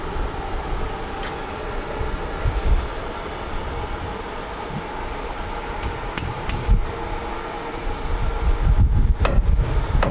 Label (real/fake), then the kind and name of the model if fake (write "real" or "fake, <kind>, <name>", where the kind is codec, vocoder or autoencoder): real